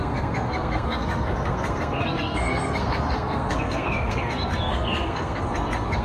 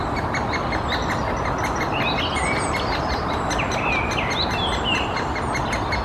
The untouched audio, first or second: second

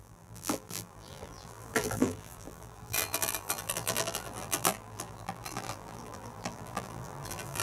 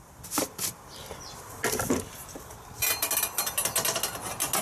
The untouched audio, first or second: second